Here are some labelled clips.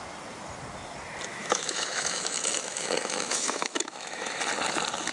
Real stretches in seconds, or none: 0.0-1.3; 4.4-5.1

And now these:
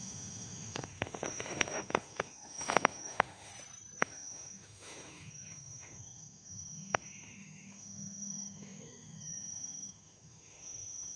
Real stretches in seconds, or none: 3.5-4.0

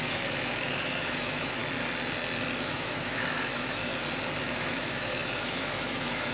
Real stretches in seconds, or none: 1.6-2.7; 3.9-4.4

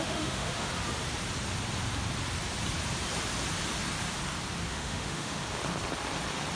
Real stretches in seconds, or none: 0.7-4.7; 5.4-6.6